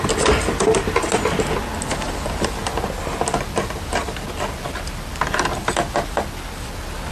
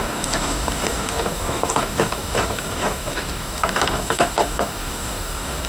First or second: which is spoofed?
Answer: second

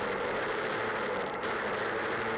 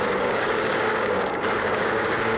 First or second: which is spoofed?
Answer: second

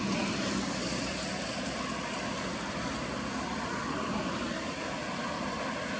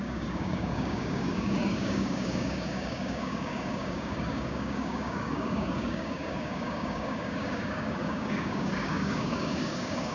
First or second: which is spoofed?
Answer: second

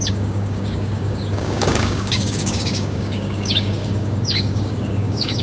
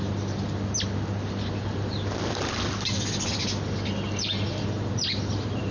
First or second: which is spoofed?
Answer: first